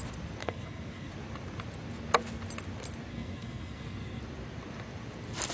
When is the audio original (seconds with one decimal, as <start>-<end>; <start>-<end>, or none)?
0.0-0.4; 1.1-3.1; 4.2-5.5